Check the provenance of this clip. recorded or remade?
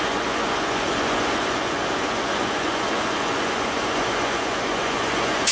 remade